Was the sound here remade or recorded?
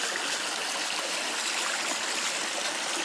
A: recorded